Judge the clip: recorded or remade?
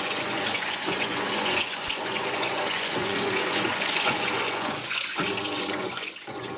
remade